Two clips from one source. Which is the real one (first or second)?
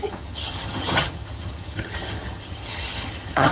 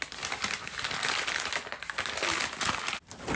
second